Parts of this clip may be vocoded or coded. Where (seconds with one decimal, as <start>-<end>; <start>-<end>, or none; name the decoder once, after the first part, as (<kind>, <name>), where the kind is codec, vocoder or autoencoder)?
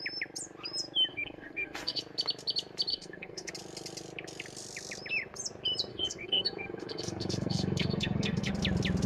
1.1-2.0 (codec, SNAC); 2.9-3.5; 5.9-8.5